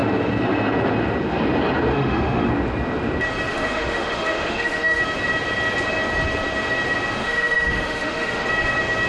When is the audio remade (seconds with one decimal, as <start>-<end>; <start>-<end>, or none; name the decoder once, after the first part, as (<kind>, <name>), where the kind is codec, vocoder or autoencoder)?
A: 1.9-2.5 (autoencoder, DAC-VAE); 3.5-5.0; 7.2-8.5